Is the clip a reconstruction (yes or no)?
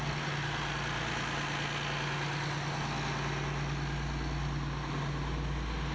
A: no